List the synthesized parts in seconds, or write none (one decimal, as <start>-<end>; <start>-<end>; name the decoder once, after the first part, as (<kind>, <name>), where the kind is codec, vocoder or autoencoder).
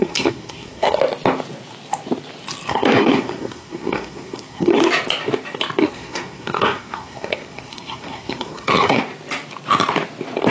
0.0-1.0 (codec, SNAC); 2.7-4.9; 5.8-9.0